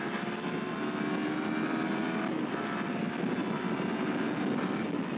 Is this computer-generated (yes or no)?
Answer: no